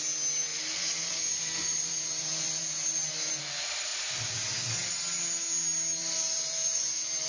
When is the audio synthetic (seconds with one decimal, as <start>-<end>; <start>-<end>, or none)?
0.5-3.3; 6.0-7.3